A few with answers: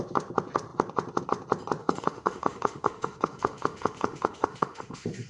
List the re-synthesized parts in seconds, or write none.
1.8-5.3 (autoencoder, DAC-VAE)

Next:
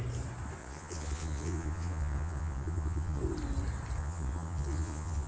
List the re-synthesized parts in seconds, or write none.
0.6-3.2 (vocoder, Vocos); 4.0-5.3

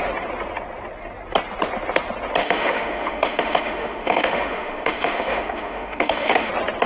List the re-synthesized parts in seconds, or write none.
2.4-6.5 (autoencoder, DAC-VAE)